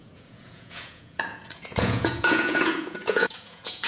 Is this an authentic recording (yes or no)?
no